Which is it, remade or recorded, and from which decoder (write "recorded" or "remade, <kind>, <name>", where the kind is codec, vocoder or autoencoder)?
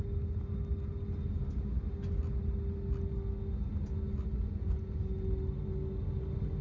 recorded